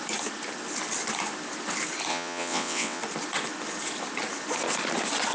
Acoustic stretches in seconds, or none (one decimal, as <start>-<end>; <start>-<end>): 0.0-2.1; 3.0-5.3